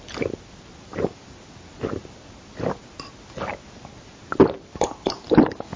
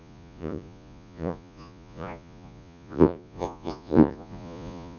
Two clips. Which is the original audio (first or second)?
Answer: first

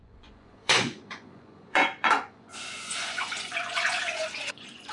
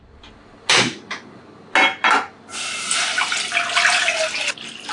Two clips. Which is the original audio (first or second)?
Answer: second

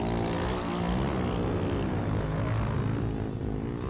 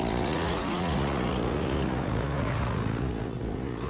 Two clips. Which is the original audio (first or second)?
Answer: first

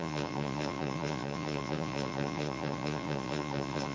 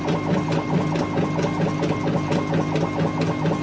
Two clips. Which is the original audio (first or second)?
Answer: second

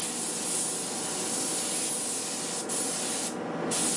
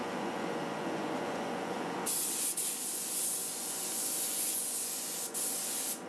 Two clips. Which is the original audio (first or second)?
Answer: first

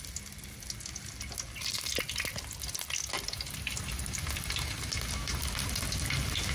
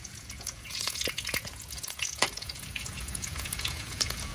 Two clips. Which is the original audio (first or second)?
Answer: first